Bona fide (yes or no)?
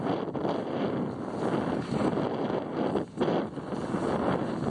yes